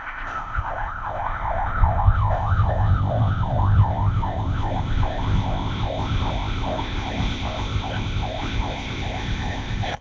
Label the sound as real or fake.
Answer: fake